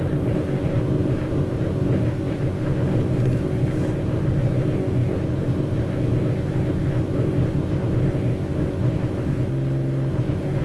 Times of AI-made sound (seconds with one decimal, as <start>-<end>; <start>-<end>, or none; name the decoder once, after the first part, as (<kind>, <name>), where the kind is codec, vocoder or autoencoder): 0.0-9.5 (codec, SNAC); 10.1-10.6